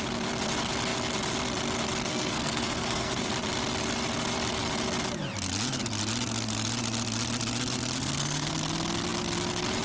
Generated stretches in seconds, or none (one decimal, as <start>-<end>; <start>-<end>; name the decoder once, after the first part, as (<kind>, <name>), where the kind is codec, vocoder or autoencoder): 2.1-3.3 (codec, SNAC); 7.9-8.5